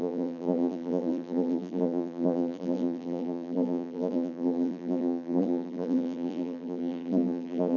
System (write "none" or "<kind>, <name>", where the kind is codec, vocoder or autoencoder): vocoder, BigVGAN v2